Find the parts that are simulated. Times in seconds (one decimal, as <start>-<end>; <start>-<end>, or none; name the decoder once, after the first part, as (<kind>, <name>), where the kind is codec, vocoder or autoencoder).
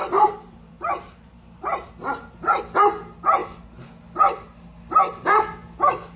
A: 0.0-1.9 (vocoder, BigVGAN v2)